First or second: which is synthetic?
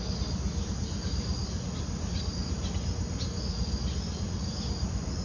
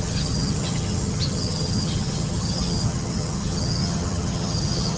second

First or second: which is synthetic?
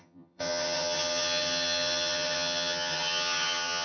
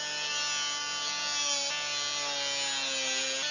first